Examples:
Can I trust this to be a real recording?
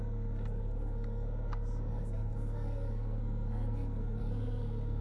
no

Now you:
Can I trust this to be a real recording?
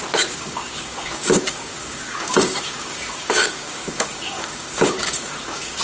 no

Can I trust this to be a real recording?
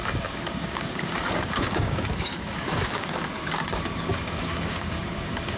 no